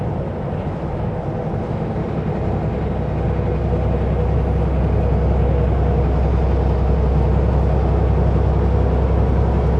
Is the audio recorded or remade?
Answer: recorded